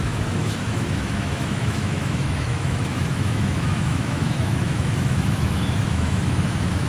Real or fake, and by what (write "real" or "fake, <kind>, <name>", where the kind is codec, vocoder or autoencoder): fake, autoencoder, DAC-VAE